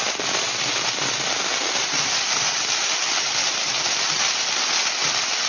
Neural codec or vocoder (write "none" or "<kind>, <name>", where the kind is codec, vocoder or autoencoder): none